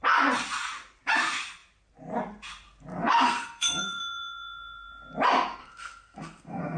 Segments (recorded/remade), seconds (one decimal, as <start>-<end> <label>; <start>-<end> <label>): 0.0-3.0 recorded; 3.0-4.0 remade; 4.0-5.6 recorded; 5.6-6.8 remade